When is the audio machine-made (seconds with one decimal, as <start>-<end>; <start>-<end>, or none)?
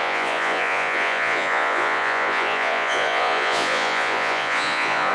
0.0-5.1